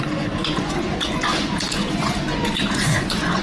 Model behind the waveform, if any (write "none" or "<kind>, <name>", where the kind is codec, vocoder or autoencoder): vocoder, Vocos